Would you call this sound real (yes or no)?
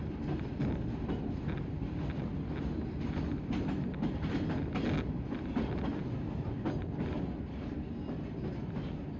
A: yes